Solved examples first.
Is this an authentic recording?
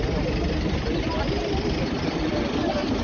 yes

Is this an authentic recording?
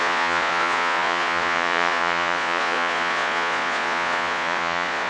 no